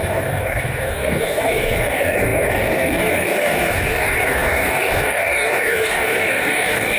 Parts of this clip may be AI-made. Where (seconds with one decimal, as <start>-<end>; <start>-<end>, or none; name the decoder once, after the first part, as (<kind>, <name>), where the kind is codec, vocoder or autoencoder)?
0.0-7.0 (codec, DAC)